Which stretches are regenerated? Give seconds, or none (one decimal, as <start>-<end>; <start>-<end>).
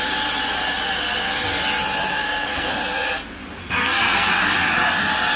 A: 2.1-2.7; 3.6-4.3